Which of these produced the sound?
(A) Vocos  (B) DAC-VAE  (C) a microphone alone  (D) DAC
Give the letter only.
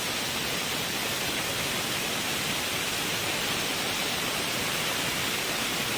C